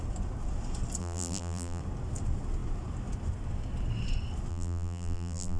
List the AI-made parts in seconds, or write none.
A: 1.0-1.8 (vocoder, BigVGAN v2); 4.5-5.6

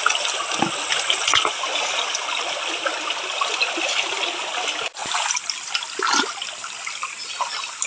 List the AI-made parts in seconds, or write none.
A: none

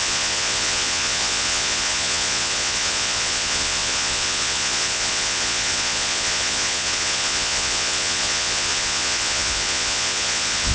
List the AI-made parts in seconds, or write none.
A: 0.0-10.7 (vocoder, Vocos)

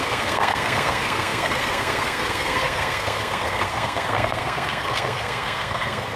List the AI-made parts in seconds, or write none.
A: 0.0-6.2 (codec, SNAC)